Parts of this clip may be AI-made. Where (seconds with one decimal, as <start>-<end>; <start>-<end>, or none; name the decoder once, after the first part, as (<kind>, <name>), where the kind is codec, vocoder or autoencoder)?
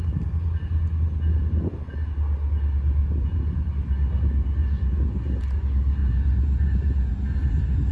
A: 3.0-3.7 (vocoder, Vocos); 4.6-5.6; 6.0-7.9